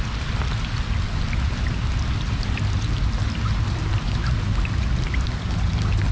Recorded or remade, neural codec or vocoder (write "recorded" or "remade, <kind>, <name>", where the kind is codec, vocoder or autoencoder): recorded